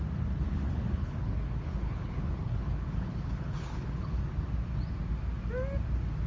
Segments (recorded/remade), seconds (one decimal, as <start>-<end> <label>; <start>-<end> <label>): 0.0-0.5 recorded; 0.5-4.2 remade; 4.2-6.3 recorded